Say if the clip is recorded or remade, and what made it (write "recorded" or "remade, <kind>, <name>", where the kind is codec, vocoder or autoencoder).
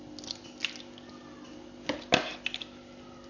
recorded